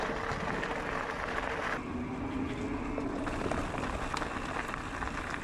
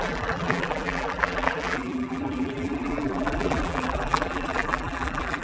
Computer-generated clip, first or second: second